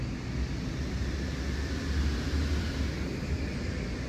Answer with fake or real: real